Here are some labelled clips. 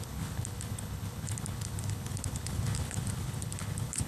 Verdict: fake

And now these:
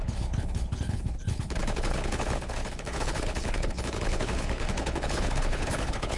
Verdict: fake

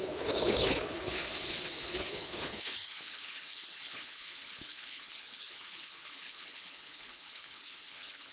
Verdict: fake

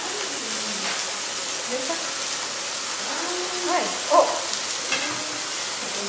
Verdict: real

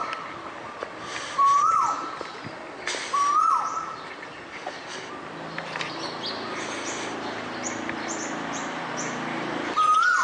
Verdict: real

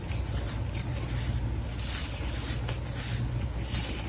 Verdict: real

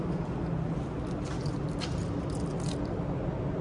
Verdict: real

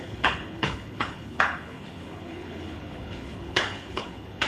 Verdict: fake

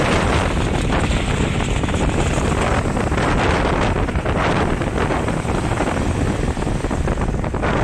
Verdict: real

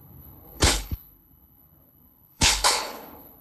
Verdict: fake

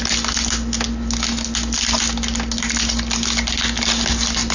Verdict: real